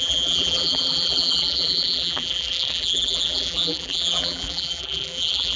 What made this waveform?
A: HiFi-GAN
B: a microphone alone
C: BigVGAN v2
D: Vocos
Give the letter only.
C